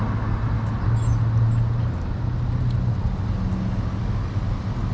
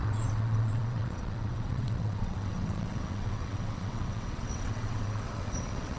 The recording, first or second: first